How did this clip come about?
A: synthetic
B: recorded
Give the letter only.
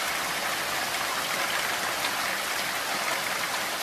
B